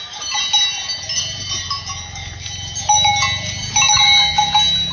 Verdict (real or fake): real